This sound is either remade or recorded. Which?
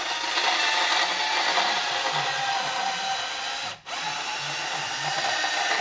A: recorded